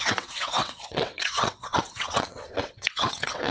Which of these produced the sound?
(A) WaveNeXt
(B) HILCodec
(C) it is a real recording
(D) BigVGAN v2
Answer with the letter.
A